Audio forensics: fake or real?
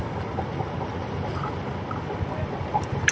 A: real